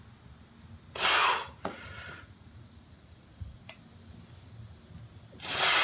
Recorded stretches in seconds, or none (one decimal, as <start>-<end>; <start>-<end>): 0.0-1.2; 3.8-5.8